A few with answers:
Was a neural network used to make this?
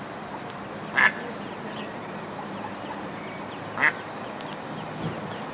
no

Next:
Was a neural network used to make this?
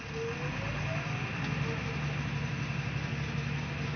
no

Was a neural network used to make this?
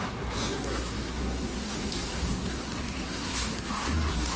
yes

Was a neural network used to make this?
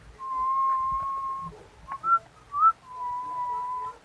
no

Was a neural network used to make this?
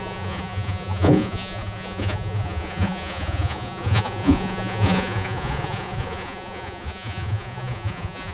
yes